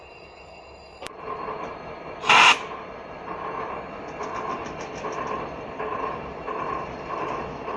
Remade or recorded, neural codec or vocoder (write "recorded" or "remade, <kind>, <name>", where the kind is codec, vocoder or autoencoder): remade, vocoder, BigVGAN v2